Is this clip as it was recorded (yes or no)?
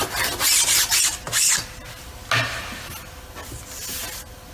yes